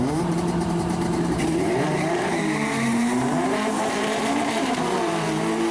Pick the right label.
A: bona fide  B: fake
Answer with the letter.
B